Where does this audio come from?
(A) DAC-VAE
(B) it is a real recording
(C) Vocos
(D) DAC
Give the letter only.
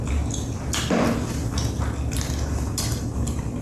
B